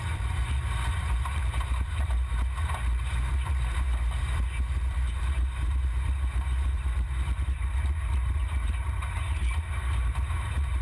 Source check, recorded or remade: remade